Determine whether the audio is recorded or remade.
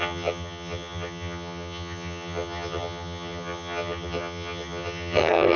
remade